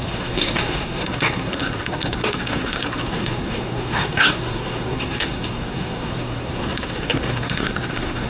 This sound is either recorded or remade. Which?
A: remade